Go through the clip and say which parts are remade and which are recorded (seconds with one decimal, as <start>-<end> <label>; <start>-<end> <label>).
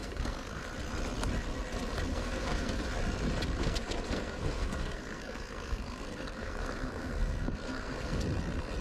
0.0-0.6 remade; 0.6-2.1 recorded; 2.1-2.8 remade; 2.8-3.6 recorded; 3.6-8.2 remade; 8.2-8.8 recorded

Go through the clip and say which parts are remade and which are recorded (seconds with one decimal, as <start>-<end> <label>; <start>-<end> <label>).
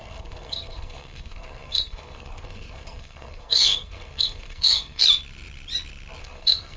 0.0-5.0 remade; 5.0-6.2 recorded; 6.2-6.8 remade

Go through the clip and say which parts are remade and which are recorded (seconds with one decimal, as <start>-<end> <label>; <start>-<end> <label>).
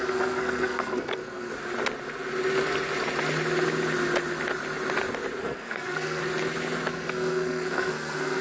0.0-1.5 remade; 1.5-5.4 recorded; 5.4-6.2 remade; 6.2-6.9 recorded; 6.9-8.4 remade